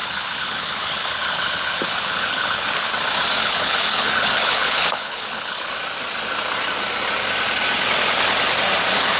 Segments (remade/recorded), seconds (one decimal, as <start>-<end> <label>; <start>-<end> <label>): 0.0-2.9 remade; 2.9-3.4 recorded; 3.4-5.7 remade; 5.7-9.2 recorded

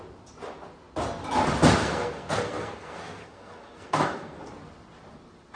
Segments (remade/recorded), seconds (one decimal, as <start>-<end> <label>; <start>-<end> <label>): 0.0-1.8 recorded; 1.8-4.5 remade; 4.5-5.6 recorded

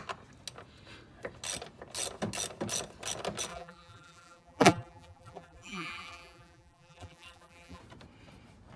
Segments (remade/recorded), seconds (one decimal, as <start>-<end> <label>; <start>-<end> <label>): 0.0-3.5 recorded; 3.5-7.8 remade; 7.8-8.8 recorded